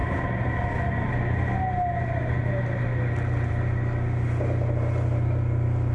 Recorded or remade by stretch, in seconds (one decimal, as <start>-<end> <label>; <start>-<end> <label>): 0.0-5.9 recorded